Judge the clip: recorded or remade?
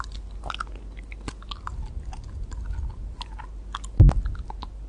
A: recorded